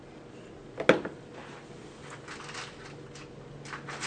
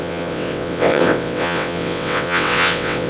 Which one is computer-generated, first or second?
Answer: second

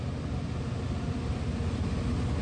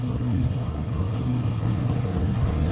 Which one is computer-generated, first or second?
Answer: second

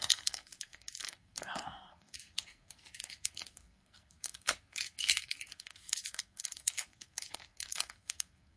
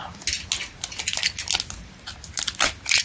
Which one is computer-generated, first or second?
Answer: first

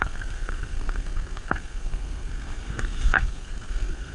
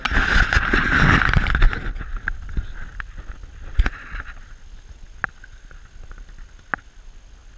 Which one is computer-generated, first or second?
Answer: first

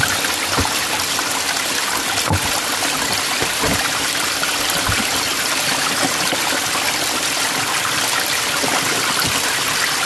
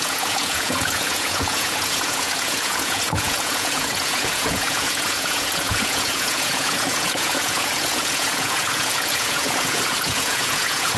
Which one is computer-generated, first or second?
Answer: second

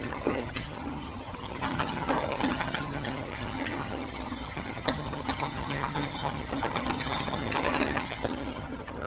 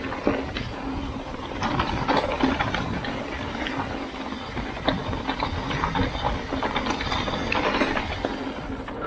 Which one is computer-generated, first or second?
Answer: first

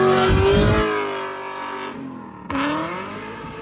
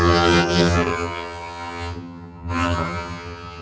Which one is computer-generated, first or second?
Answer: second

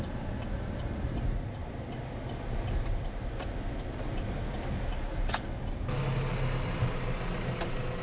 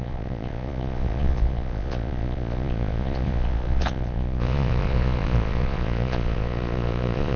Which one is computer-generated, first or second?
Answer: second